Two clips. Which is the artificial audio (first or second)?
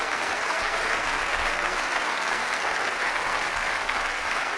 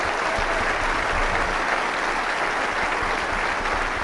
first